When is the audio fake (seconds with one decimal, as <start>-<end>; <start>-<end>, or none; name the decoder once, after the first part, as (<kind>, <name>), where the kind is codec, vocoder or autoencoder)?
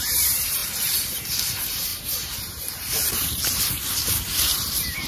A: 0.0-5.1 (vocoder, BigVGAN v2)